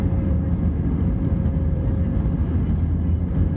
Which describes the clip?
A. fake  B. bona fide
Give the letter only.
B